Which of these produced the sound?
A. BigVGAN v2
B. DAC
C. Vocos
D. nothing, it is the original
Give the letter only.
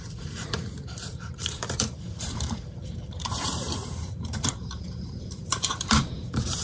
A